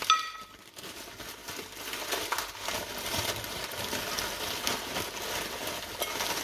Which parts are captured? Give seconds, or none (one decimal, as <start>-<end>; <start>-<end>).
0.0-6.4